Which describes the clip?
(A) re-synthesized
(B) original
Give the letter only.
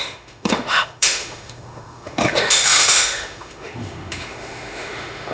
A